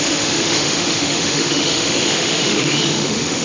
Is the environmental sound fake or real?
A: fake